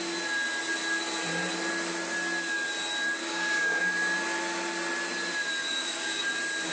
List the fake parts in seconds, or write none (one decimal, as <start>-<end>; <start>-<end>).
3.2-3.8; 5.6-6.2